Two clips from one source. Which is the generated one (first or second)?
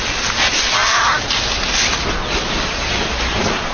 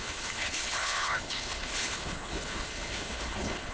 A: second